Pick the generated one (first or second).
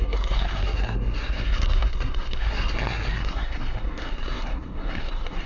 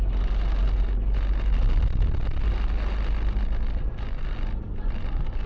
first